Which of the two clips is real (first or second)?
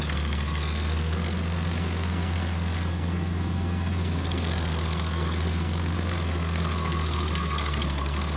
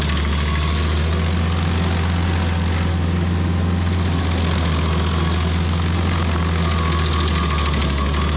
second